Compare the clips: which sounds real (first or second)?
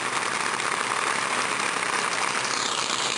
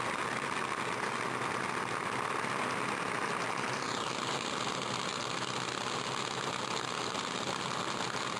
second